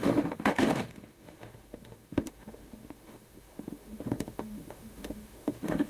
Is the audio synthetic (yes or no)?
yes